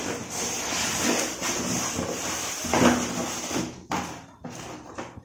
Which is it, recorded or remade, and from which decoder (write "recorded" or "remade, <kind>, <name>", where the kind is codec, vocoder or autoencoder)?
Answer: recorded